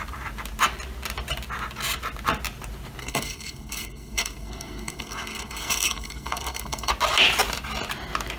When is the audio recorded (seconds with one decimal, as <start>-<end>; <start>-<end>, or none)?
0.0-3.0; 6.9-8.4